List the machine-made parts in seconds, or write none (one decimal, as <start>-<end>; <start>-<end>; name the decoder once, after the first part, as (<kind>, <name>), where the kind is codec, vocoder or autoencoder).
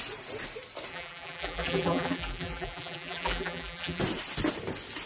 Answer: 0.9-4.0 (vocoder, BigVGAN v2)